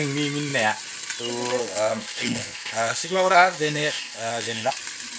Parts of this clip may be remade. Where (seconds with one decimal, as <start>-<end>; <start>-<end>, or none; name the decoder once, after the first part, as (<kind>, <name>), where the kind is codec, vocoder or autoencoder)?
1.6-4.7 (codec, ZipCodec)